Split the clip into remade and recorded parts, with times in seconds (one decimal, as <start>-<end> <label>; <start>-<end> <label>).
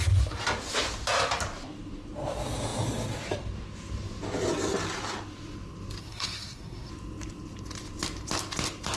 0.0-6.0 recorded; 6.0-6.9 remade; 6.9-9.0 recorded